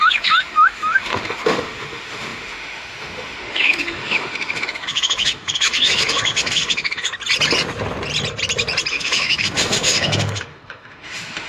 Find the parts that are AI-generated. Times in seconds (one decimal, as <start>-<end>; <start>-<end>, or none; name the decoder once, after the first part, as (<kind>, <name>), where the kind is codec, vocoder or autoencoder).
0.0-7.1 (autoencoder, DAC-VAE); 8.9-11.5